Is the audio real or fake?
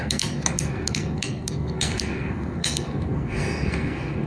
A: fake